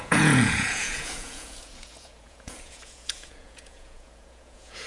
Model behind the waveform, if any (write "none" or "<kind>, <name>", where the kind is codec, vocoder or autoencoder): vocoder, Vocos